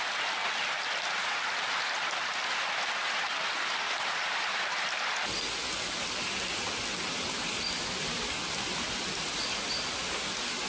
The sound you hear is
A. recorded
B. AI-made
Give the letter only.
A